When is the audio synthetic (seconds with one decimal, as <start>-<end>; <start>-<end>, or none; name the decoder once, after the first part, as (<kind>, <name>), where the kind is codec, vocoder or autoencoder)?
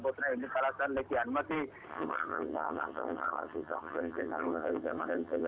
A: 1.9-5.5 (vocoder, HiFi-GAN)